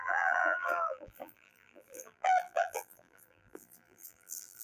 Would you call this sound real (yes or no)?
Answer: no